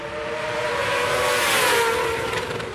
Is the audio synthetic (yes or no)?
no